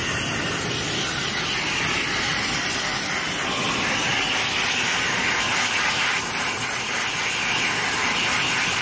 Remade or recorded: recorded